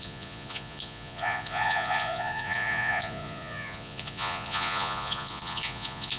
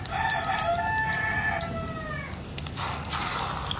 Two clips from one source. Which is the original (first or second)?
second